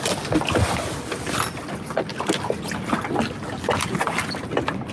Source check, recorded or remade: recorded